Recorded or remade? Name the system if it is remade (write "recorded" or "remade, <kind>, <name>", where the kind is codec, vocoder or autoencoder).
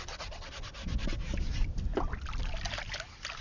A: recorded